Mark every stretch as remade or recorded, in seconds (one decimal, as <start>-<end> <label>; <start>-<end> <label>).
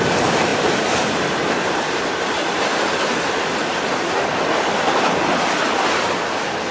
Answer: 0.0-0.5 recorded; 0.5-2.6 remade; 2.6-3.6 recorded; 3.6-4.3 remade; 4.3-6.7 recorded